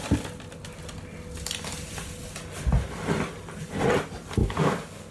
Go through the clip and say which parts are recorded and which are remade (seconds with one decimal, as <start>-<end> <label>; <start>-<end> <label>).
0.0-4.4 recorded; 4.4-5.1 remade